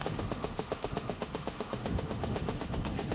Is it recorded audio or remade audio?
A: remade